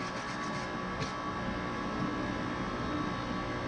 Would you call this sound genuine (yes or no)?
yes